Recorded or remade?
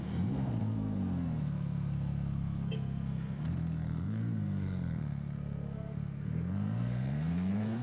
remade